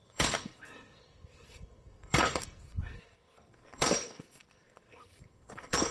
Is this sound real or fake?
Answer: fake